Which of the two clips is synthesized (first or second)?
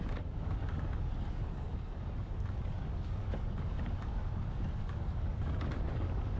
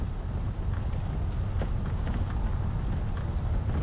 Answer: first